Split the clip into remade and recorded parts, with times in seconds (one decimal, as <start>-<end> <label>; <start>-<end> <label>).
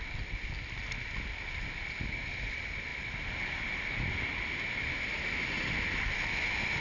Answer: 0.0-6.8 recorded